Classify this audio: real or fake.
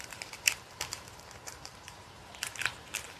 fake